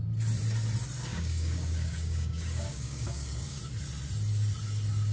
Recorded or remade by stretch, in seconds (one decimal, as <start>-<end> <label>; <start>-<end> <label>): 0.0-1.1 recorded; 1.1-3.6 remade; 3.6-5.1 recorded